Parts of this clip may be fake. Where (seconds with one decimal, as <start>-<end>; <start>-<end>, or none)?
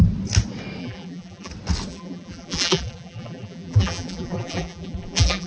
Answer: 0.8-1.5; 1.9-5.5